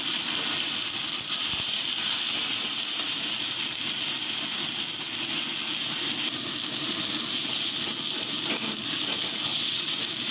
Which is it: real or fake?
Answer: real